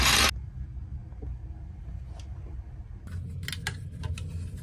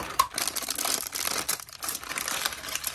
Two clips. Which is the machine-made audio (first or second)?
second